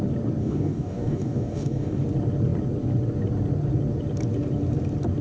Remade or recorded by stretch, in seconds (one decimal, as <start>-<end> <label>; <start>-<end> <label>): 0.0-0.4 recorded; 0.4-2.0 remade; 2.0-5.2 recorded